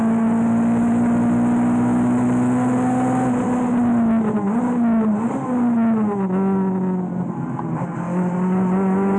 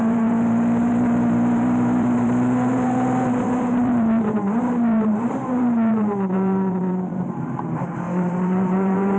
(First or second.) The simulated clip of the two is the second